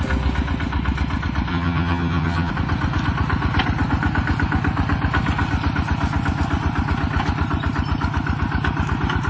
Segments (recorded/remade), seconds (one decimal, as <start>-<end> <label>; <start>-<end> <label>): 0.0-1.5 recorded; 1.5-2.5 remade; 2.5-9.3 recorded